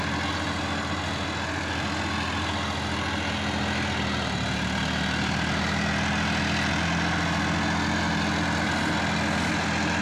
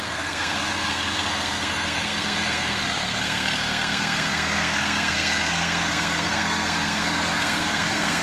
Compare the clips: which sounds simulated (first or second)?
second